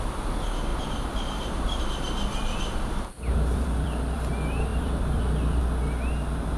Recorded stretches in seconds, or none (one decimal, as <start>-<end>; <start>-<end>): 0.0-2.4; 4.3-4.7; 5.6-6.6